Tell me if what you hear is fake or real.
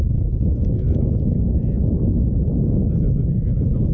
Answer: real